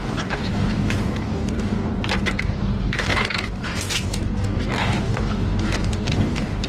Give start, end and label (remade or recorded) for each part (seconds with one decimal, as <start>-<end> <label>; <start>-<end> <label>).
0.0-1.9 remade; 1.9-2.4 recorded; 2.4-6.7 remade